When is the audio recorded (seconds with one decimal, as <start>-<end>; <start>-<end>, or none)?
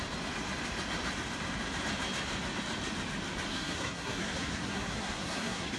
0.0-3.5